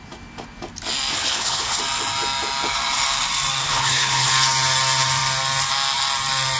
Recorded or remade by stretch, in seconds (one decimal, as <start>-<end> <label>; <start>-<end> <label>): 0.0-1.1 recorded; 1.1-1.8 remade; 1.8-3.6 recorded; 3.6-4.3 remade; 4.3-6.6 recorded

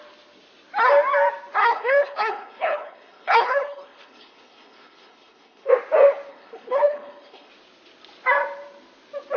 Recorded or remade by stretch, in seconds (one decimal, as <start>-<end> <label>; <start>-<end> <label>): 0.0-1.6 recorded; 1.6-5.7 remade; 5.7-6.3 recorded; 6.3-7.5 remade; 7.5-9.4 recorded

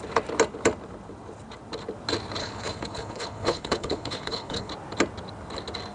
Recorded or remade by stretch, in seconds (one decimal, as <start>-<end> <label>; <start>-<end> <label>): 0.0-2.4 recorded; 2.4-4.7 remade; 4.7-5.9 recorded

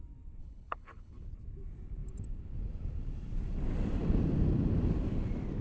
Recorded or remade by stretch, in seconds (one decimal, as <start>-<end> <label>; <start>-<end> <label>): 0.0-0.4 recorded; 0.4-1.3 remade; 1.3-5.6 recorded